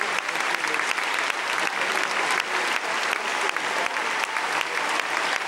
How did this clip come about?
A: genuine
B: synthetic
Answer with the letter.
A